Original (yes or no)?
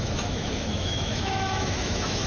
no